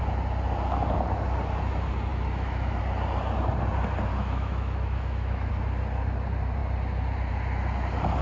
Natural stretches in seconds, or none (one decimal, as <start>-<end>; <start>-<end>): 0.0-2.1; 2.8-4.1; 5.5-8.2